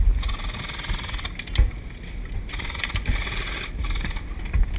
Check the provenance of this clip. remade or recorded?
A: recorded